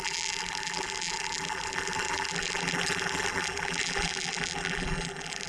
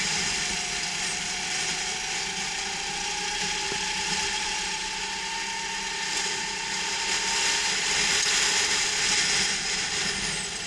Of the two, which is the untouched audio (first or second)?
second